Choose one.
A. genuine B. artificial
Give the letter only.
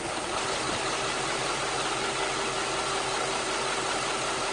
B